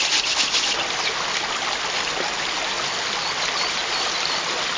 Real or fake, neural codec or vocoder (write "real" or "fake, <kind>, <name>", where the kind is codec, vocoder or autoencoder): real